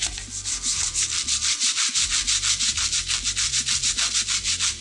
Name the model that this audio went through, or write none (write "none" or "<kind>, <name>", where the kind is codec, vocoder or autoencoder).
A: none